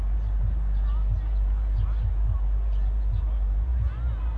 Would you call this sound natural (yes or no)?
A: yes